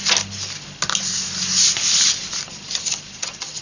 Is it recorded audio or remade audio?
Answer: recorded